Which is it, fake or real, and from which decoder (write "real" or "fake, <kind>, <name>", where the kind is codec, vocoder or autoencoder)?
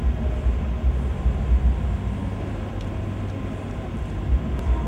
real